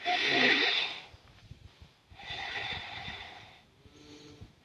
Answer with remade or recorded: remade